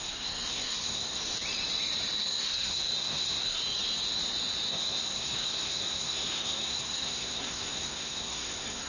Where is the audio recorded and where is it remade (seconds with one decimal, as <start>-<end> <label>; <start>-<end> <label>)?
0.0-1.2 remade; 1.2-2.2 recorded; 2.2-3.6 remade; 3.6-4.7 recorded; 4.7-8.9 remade

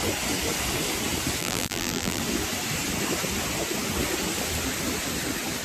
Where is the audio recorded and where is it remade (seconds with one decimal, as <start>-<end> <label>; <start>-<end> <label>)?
0.0-1.4 recorded; 1.4-2.2 remade; 2.2-5.6 recorded